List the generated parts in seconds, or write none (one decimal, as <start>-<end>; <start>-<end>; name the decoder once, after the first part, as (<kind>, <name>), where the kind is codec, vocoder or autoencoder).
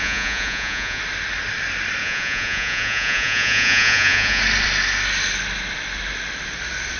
0.0-1.0 (vocoder, Vocos); 2.0-4.4